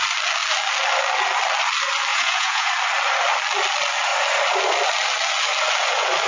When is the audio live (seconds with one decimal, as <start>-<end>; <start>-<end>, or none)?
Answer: 0.0-2.1; 2.7-6.3